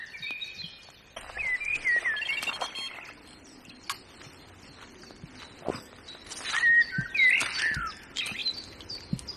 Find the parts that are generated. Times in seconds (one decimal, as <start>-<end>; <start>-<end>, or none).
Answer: none